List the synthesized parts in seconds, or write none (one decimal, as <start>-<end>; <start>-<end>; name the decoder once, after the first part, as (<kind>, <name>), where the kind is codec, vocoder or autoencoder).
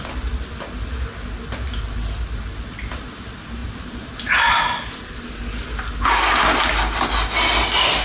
none